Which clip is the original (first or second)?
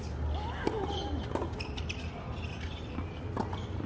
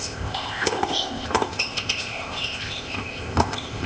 first